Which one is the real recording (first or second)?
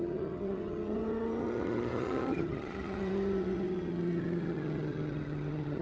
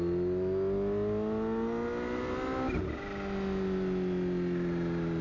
second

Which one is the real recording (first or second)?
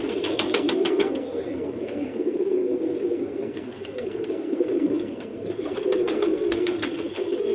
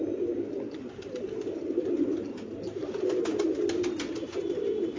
second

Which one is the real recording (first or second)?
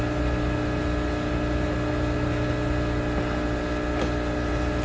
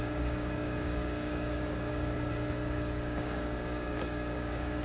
first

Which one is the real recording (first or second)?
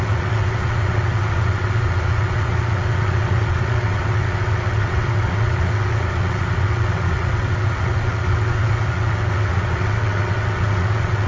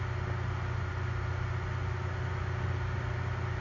second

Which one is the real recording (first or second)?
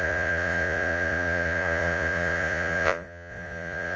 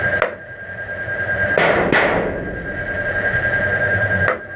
second